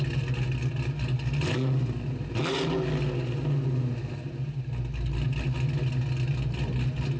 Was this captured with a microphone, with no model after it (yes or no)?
yes